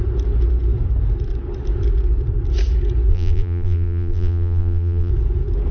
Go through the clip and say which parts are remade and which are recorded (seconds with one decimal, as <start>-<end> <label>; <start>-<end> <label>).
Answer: 0.0-3.1 recorded; 3.1-5.1 remade; 5.1-5.7 recorded